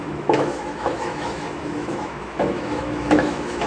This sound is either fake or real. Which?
fake